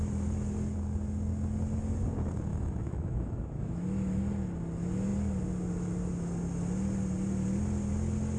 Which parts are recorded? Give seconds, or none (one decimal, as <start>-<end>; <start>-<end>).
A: 0.0-2.5; 4.2-8.4